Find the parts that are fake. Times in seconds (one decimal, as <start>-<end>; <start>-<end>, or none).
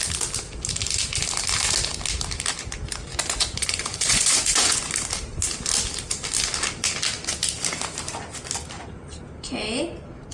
3.1-4.9